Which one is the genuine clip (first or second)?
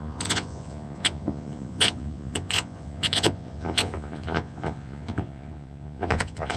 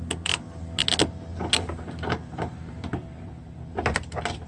second